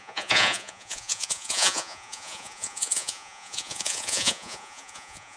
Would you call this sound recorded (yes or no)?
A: no